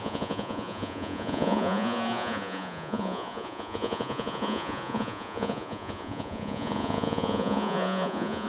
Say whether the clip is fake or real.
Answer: fake